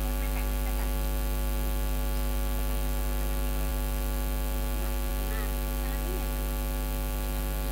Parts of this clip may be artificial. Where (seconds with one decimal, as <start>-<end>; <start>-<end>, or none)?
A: none